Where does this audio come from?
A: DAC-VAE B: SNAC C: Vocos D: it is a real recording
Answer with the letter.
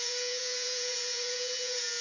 C